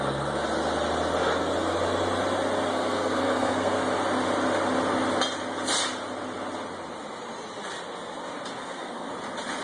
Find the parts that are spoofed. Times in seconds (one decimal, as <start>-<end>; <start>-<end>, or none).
2.7-3.8; 8.6-9.1